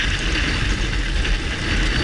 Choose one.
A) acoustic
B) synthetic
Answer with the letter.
A